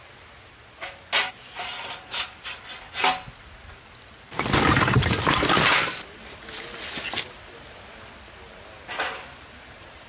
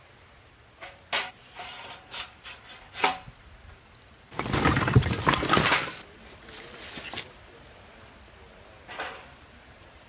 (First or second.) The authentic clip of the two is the first